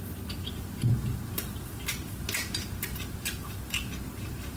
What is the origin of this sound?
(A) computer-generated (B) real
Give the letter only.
B